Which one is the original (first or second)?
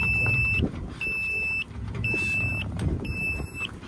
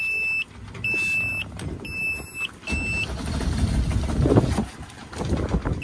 second